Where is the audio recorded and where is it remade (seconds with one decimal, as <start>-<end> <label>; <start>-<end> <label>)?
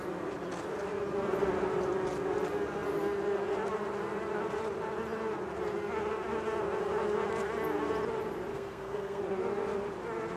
0.0-8.5 recorded; 8.5-9.2 remade; 9.2-10.4 recorded